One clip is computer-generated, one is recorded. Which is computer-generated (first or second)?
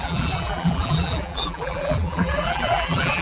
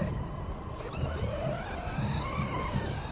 first